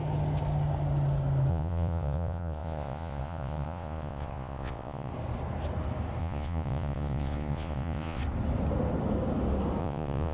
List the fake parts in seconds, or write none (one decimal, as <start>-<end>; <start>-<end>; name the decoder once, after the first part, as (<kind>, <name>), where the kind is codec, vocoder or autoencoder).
1.5-5.1 (vocoder, Vocos); 6.2-8.2; 9.8-10.3